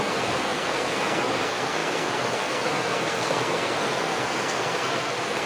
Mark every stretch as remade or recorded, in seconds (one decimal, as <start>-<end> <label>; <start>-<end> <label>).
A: 0.0-5.5 remade

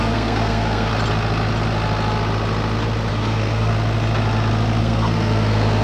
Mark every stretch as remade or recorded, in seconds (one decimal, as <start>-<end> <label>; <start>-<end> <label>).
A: 0.0-0.9 remade; 0.9-3.1 recorded; 3.1-3.7 remade; 3.7-4.8 recorded; 4.8-5.8 remade